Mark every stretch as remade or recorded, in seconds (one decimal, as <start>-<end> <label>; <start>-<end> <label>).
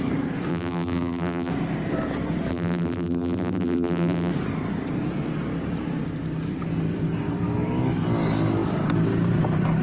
0.0-0.5 recorded; 0.5-1.5 remade; 1.5-2.5 recorded; 2.5-4.3 remade; 4.3-9.8 recorded